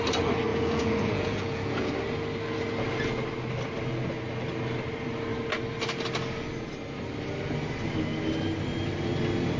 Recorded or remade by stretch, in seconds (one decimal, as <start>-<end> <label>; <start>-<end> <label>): 0.0-0.5 recorded; 0.5-1.9 remade; 1.9-9.6 recorded